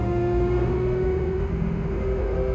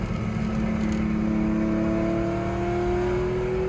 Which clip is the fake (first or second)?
first